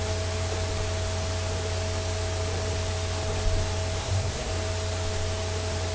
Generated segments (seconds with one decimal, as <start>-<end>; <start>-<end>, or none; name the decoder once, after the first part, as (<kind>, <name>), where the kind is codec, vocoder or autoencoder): 4.0-4.5 (codec, SNAC)

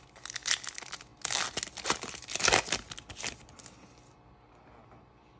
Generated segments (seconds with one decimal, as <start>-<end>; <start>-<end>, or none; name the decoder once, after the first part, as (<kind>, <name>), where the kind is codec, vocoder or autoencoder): none

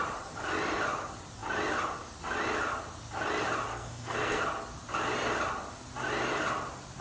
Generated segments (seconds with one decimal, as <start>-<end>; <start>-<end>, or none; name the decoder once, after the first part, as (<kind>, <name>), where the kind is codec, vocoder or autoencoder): 3.7-4.4 (codec, SNAC)

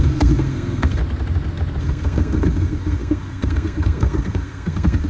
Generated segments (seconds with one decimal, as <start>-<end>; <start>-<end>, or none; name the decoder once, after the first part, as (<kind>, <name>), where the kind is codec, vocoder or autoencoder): 0.0-1.0 (codec, SNAC); 1.8-5.1

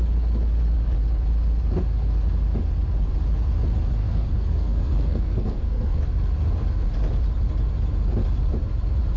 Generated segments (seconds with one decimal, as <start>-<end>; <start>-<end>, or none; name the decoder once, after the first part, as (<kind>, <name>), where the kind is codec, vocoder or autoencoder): 4.0-6.0 (codec, SNAC)

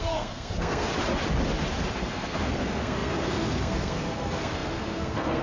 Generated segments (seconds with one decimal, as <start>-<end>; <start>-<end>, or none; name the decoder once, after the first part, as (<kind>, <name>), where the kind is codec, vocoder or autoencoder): 0.0-0.9 (codec, SNAC); 2.0-5.4

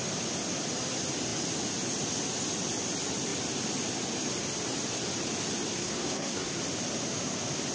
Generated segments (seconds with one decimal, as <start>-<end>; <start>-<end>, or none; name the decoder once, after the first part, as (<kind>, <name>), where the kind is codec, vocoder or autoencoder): 5.7-6.6 (codec, SNAC)

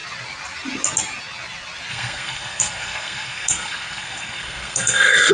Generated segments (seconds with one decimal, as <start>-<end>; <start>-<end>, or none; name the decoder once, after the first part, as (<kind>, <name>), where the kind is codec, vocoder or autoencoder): 1.9-5.3 (codec, SNAC)